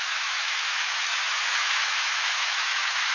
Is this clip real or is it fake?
fake